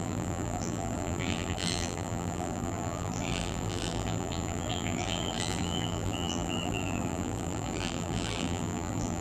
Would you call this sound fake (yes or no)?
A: yes